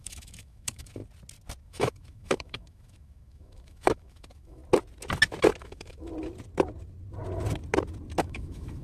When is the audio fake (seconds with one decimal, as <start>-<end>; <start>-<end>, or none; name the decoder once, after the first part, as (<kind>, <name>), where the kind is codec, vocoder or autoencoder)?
0.0-1.0 (autoencoder, DAC-VAE); 1.6-4.6; 5.6-6.1; 8.2-8.8